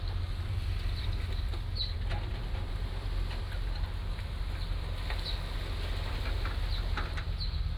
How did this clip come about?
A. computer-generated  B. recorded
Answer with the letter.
B